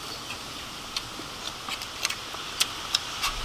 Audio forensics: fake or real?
real